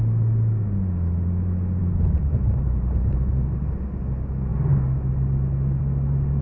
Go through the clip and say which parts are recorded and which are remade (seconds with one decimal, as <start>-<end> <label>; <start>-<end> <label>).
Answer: 0.0-1.8 recorded; 1.8-3.3 remade; 3.3-6.4 recorded